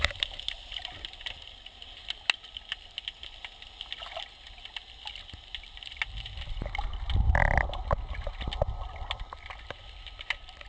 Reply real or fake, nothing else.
real